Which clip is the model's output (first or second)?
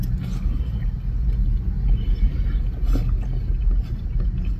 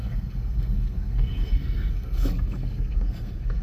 second